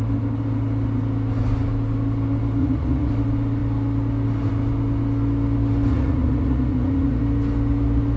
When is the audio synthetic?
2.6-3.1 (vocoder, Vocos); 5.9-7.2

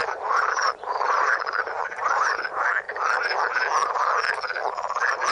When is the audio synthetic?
0.0-1.8 (vocoder, BigVGAN v2)